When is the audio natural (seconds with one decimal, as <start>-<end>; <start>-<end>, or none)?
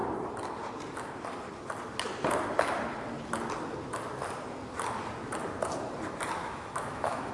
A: 0.0-6.4